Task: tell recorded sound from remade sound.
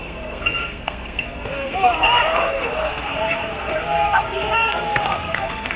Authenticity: remade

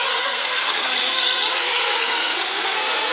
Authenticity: remade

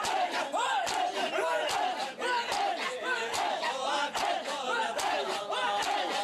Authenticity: recorded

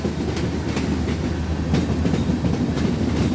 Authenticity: recorded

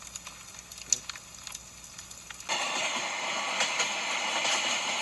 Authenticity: recorded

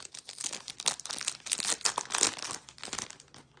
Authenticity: recorded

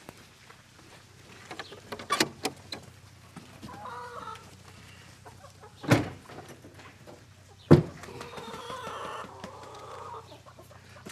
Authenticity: recorded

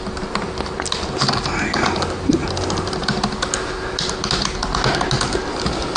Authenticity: recorded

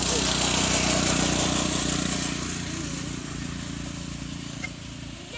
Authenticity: recorded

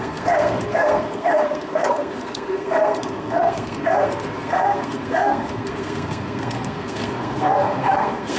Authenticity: remade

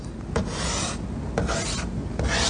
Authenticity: recorded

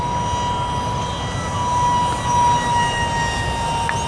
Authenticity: recorded